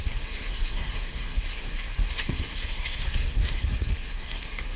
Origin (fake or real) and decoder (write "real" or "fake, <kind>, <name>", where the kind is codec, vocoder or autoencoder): fake, codec, SNAC